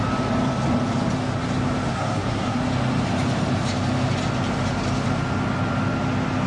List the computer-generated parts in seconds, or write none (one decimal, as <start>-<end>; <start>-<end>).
1.9-2.6